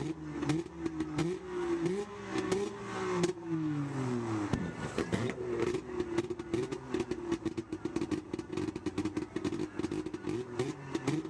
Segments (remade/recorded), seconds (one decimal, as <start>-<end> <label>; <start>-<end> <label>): 0.0-11.3 recorded